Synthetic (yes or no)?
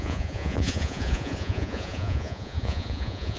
yes